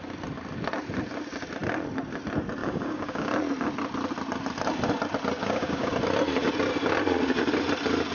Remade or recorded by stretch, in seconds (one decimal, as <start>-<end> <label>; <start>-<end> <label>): 0.0-2.6 recorded; 2.6-3.3 remade; 3.3-5.4 recorded; 5.4-5.9 remade; 5.9-8.1 recorded